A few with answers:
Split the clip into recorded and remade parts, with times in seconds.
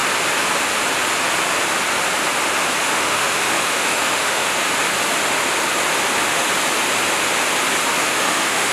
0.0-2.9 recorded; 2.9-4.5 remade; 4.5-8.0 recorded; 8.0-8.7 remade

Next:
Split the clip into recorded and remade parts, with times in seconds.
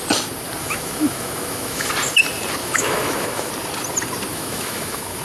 0.0-0.6 recorded; 0.6-1.9 remade; 1.9-2.6 recorded; 2.6-3.5 remade; 3.5-4.3 recorded; 4.3-5.2 remade